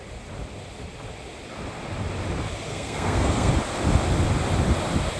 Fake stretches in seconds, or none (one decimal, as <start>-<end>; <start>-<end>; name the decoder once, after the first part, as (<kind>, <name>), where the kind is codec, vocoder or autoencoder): 2.7-3.5 (codec, SNAC)